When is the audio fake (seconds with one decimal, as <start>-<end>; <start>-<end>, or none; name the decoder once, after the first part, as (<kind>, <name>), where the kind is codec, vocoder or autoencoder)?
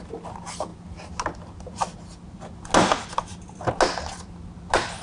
none